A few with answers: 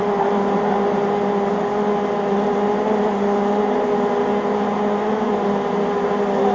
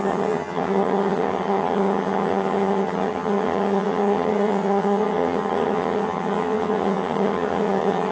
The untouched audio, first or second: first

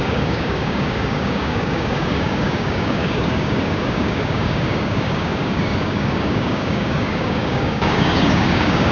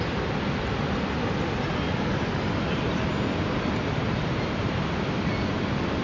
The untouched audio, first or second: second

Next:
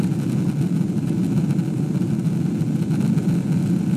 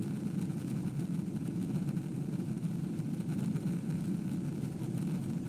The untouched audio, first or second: first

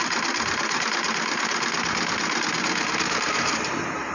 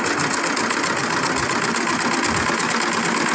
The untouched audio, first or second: second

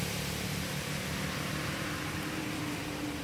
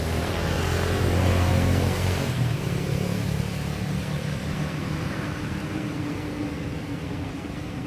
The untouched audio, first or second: first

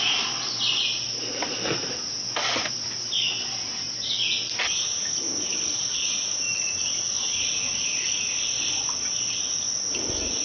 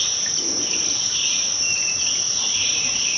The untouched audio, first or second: first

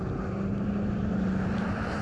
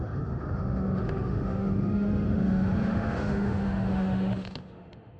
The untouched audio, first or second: first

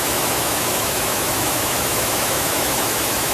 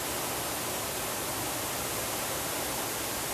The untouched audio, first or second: second